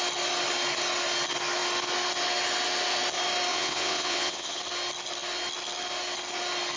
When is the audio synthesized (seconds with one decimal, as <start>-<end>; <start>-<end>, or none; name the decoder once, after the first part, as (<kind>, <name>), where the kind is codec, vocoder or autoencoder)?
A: 3.5-4.6 (vocoder, WaveNeXt)